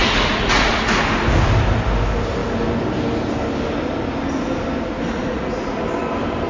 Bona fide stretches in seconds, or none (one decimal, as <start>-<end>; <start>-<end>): 1.0-5.2; 5.8-6.5